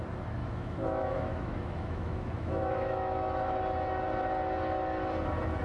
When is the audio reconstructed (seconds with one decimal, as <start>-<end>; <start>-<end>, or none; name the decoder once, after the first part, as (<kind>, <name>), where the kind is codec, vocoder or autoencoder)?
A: 0.4-3.6 (autoencoder, DAC-VAE)